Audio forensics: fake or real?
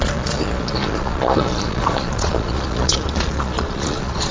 fake